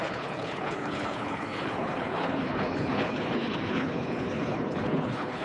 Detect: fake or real fake